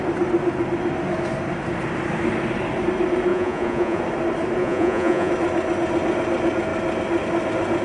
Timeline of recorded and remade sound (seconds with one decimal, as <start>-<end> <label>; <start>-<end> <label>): 0.0-3.3 recorded; 3.3-4.0 remade; 4.0-4.6 recorded; 4.6-5.3 remade; 5.3-7.8 recorded